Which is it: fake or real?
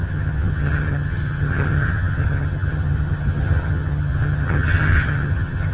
fake